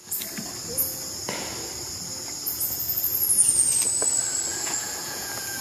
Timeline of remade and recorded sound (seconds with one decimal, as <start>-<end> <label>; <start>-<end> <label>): 0.0-4.5 recorded; 4.5-5.6 remade